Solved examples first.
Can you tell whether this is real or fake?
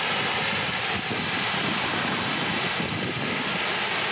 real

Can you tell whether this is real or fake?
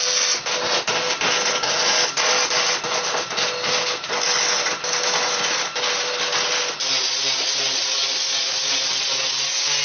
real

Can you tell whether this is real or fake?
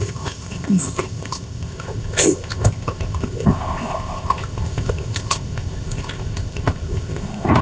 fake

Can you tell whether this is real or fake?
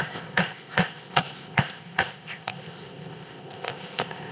fake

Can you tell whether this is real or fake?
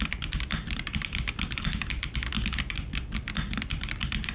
real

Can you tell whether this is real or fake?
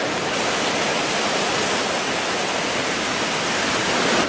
real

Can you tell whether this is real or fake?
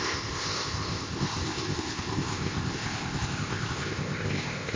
fake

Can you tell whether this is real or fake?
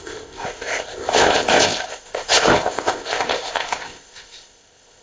fake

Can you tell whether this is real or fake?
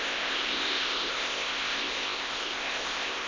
fake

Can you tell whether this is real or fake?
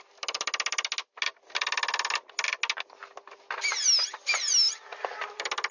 real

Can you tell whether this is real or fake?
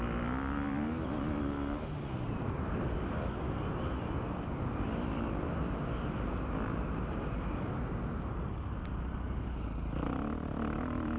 real